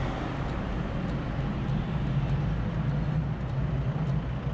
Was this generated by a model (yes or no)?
no